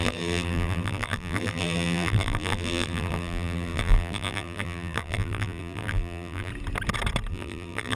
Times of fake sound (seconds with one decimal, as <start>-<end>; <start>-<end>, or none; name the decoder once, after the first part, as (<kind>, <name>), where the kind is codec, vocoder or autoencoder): 0.0-6.5 (vocoder, BigVGAN v2); 7.3-8.0

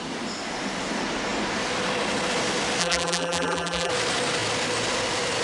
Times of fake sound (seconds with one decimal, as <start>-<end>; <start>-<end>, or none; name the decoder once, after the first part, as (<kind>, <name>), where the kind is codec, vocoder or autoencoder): 2.8-3.9 (vocoder, BigVGAN v2)

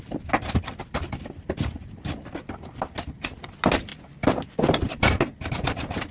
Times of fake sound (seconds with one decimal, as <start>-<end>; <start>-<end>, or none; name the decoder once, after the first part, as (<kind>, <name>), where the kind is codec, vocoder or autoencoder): none